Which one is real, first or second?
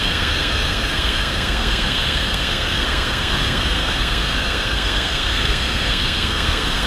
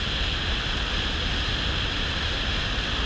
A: second